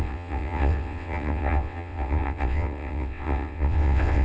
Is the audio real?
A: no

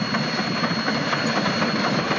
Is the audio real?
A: yes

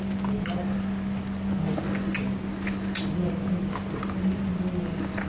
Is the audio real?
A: yes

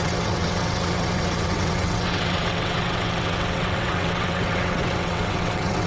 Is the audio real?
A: no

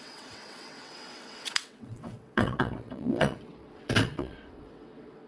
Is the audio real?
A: no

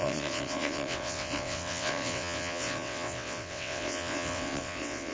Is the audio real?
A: no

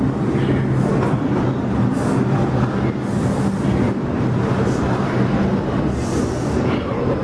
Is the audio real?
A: yes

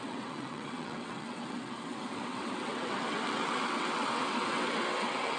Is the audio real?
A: no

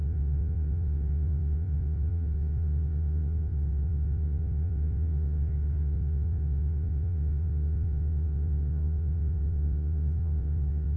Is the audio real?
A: no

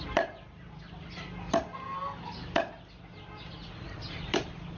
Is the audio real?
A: yes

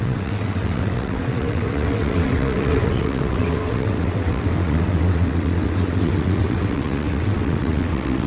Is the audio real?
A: no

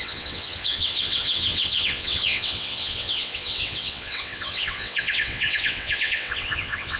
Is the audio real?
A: no